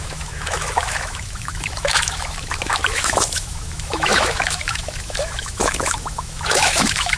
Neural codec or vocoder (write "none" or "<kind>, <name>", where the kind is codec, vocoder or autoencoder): autoencoder, DAC-VAE